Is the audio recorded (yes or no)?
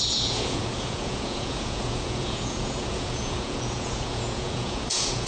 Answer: no